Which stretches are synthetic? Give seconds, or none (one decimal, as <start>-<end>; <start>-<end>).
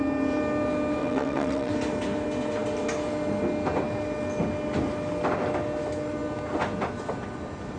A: 1.0-1.7